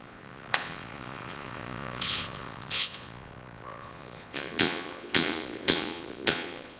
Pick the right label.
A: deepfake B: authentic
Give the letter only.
A